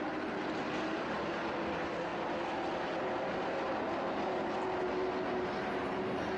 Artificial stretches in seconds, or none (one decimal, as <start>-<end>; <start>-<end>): none